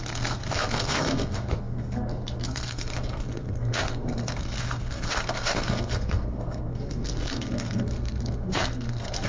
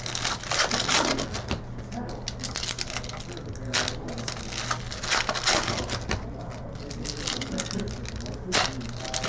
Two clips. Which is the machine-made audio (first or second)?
first